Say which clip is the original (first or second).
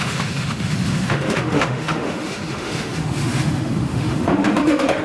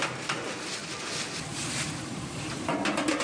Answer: second